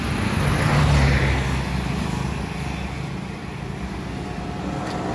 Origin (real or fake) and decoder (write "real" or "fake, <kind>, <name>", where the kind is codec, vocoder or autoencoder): real